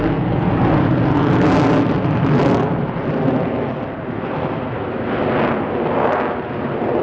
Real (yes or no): yes